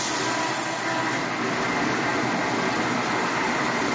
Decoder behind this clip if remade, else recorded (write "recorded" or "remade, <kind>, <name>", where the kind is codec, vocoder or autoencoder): recorded